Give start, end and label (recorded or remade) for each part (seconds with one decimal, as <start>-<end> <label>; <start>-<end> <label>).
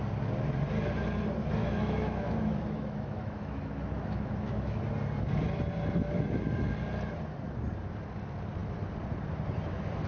0.0-1.6 recorded; 1.6-4.8 remade; 4.8-10.1 recorded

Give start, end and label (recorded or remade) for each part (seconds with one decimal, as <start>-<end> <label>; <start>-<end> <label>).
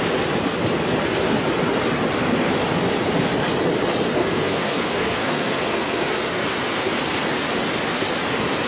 0.0-4.2 recorded; 4.2-6.4 remade; 6.4-8.7 recorded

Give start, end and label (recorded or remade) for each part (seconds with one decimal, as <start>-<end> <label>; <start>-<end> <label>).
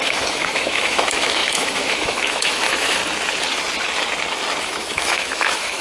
0.0-3.0 remade; 3.0-4.6 recorded; 4.6-5.8 remade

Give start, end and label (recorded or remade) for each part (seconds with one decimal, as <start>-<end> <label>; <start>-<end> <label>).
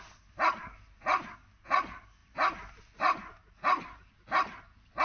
0.0-5.0 recorded